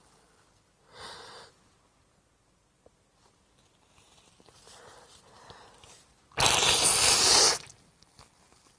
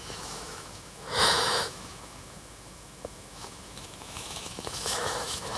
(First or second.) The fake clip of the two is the second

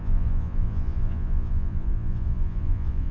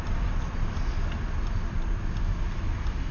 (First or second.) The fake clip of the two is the first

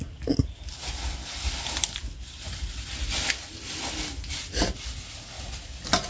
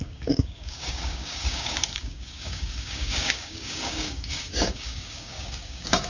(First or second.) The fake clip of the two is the second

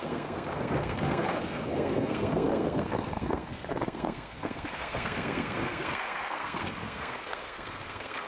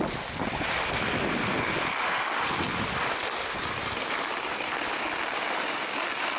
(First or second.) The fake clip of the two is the first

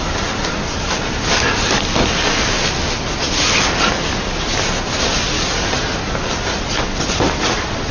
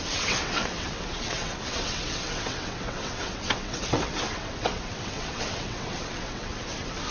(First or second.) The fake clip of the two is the second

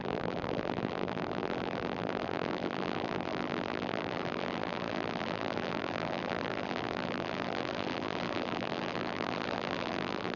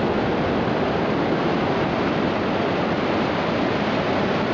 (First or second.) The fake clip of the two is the first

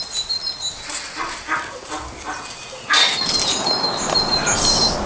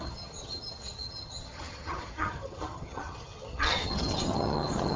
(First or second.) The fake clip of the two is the second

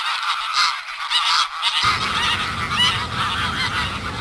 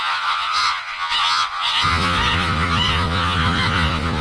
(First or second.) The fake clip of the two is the second